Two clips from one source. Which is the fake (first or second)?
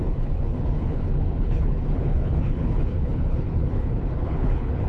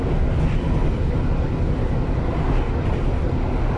first